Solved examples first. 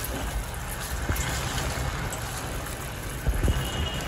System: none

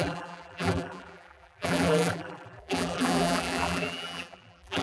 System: vocoder, BigVGAN v2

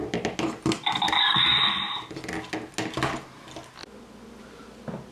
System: none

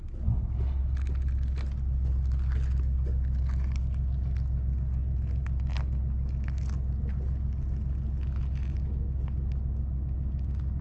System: none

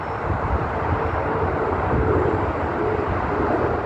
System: vocoder, BigVGAN v2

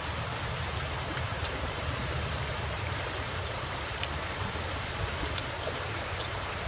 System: vocoder, BigVGAN v2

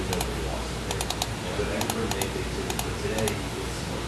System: none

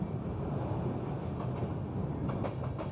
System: none